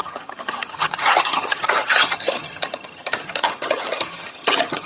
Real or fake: fake